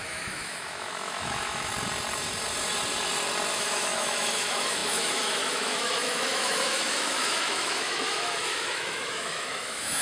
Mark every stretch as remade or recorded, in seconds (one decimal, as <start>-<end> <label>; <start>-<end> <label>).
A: 0.0-1.7 remade; 1.7-3.5 recorded; 3.5-10.0 remade